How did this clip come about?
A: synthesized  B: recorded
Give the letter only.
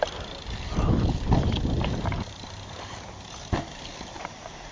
A